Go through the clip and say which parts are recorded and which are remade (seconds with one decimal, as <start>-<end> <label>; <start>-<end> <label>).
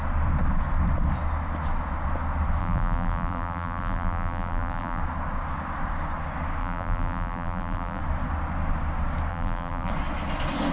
0.0-2.6 recorded; 2.6-5.0 remade; 5.0-6.6 recorded; 6.6-8.0 remade; 8.0-9.3 recorded; 9.3-9.9 remade; 9.9-10.7 recorded